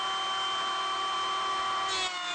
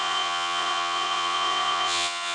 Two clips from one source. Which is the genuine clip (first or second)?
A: first